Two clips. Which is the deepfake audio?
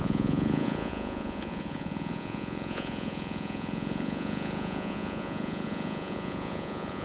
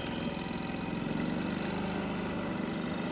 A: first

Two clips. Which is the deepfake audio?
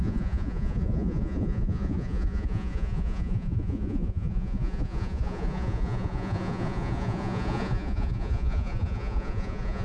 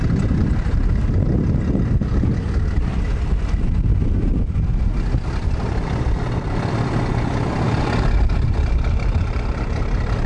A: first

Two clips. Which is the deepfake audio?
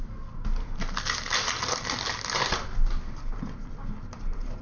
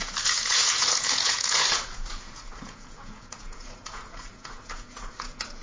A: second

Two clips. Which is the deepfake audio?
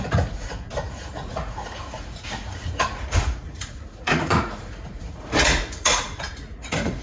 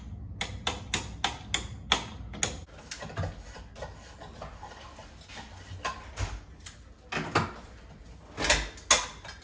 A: first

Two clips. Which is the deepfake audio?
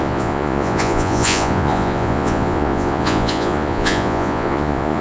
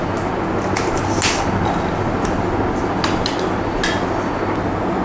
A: first